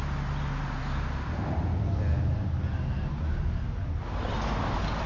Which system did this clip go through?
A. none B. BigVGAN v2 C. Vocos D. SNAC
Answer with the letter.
A